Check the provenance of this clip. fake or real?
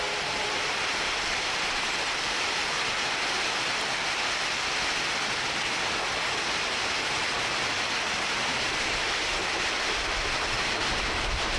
real